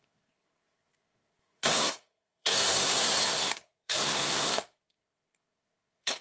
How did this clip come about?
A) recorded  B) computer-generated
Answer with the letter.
B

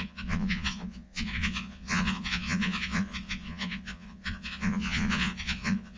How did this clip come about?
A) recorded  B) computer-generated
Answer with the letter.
B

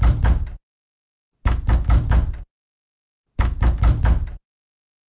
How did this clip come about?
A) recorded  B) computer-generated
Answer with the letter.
A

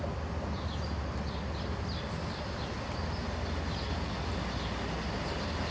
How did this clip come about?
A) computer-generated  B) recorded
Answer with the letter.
B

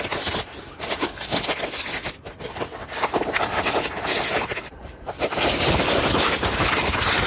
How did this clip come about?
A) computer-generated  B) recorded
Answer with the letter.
B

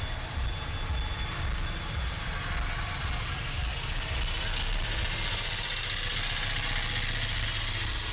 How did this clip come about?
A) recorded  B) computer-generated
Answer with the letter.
A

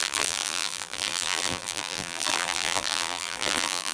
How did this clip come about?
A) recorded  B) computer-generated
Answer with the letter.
B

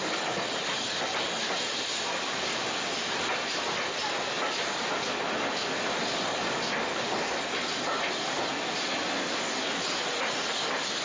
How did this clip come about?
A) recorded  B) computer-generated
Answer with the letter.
A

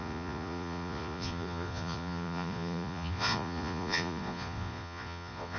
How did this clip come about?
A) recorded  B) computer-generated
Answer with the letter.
B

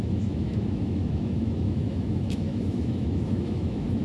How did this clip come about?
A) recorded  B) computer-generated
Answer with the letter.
B